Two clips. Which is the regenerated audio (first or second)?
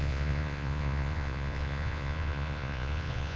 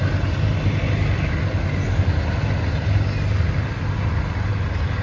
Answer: first